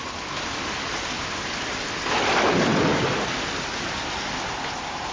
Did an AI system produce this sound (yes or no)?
no